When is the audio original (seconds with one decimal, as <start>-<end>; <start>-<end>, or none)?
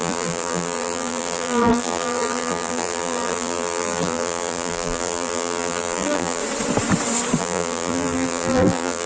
6.4-7.4